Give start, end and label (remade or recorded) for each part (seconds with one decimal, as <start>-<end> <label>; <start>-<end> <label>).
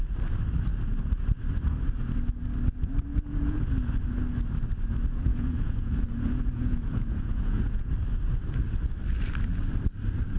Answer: 0.0-3.1 recorded; 3.1-3.7 remade; 3.7-5.3 recorded; 5.3-7.9 remade; 7.9-10.4 recorded